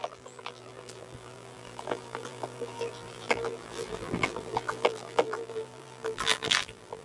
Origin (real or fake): fake